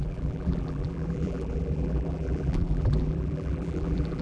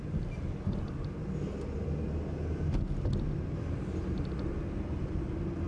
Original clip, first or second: second